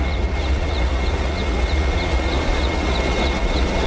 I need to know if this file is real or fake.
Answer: fake